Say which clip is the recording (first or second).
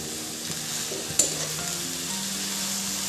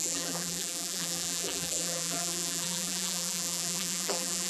first